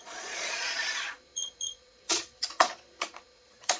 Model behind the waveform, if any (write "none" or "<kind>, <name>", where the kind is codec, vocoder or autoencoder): vocoder, Vocos